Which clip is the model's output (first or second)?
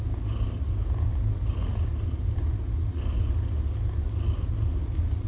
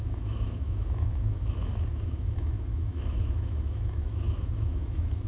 second